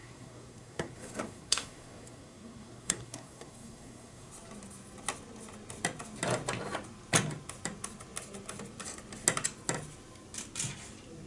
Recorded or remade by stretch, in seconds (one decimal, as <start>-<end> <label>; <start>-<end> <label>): 0.0-4.3 remade; 4.3-11.3 recorded